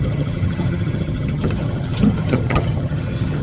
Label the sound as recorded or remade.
remade